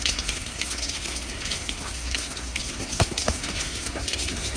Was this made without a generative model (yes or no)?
no